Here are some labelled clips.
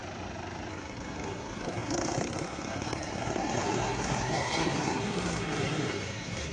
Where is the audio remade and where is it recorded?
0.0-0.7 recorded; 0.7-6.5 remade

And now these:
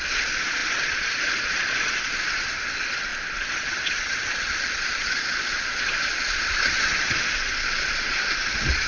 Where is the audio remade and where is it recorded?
0.0-8.9 remade

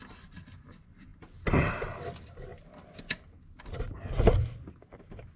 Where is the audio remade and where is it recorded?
0.0-5.4 recorded

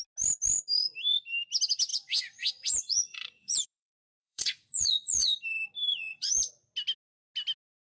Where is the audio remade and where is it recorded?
0.0-1.9 recorded; 1.9-5.4 remade; 5.4-5.9 recorded; 5.9-6.5 remade; 6.5-7.8 recorded

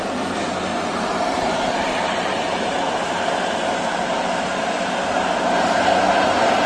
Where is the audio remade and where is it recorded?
0.0-0.7 recorded; 0.7-2.8 remade; 2.8-6.7 recorded

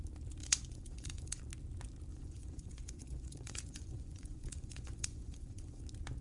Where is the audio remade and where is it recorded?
0.0-0.4 recorded; 0.4-1.4 remade; 1.4-2.1 recorded; 2.1-5.8 remade; 5.8-6.2 recorded